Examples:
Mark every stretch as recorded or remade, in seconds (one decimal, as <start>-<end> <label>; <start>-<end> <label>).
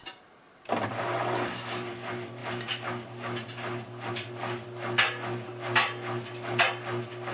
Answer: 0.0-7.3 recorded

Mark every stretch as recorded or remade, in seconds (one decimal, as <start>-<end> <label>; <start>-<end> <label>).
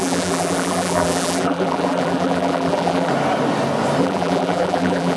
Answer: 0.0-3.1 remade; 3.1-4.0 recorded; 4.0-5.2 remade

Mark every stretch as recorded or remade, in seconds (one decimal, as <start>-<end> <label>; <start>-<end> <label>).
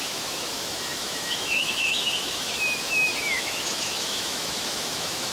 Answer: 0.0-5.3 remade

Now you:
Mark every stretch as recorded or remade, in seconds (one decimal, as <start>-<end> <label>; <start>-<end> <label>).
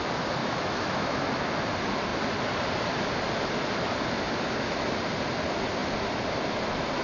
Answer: 0.0-0.4 recorded; 0.4-1.2 remade; 1.2-7.0 recorded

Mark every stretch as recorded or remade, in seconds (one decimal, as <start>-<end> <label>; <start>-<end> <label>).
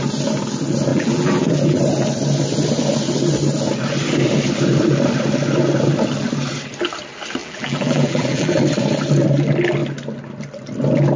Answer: 0.0-0.9 recorded; 0.9-1.8 remade; 1.8-7.4 recorded; 7.4-8.6 remade; 8.6-11.2 recorded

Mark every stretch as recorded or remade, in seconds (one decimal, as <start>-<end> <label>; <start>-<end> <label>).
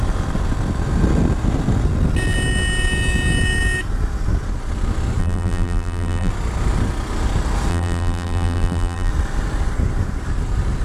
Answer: 0.0-5.2 recorded; 5.2-6.3 remade; 6.3-7.7 recorded; 7.7-9.1 remade; 9.1-10.8 recorded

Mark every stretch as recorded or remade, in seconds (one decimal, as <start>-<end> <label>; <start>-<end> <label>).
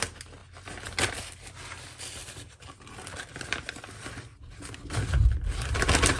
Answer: 0.0-2.2 recorded; 2.2-5.0 remade; 5.0-6.2 recorded